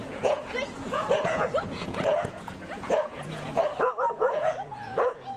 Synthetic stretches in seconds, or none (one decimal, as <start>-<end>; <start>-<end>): 0.0-5.4